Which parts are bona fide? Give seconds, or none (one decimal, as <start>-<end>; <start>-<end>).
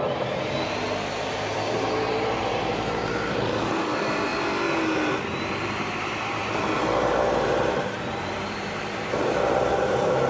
0.8-1.3; 4.3-5.5; 6.4-7.1